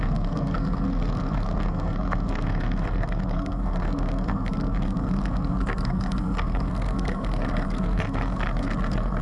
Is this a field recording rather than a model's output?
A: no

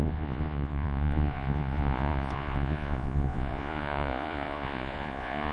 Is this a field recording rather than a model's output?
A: no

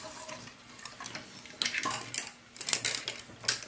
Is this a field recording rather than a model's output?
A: yes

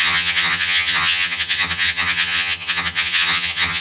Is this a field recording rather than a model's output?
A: no